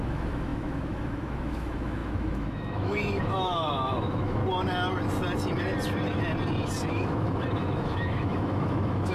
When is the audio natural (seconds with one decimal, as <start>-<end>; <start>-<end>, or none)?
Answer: 4.4-6.9